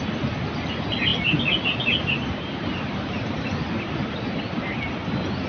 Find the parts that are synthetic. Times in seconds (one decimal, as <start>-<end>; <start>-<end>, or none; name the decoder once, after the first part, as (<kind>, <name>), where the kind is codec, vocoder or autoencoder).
none